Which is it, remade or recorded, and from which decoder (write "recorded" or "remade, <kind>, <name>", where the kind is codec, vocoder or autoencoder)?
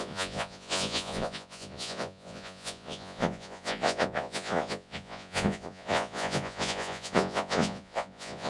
remade, vocoder, Vocos